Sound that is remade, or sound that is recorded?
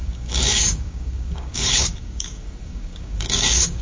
remade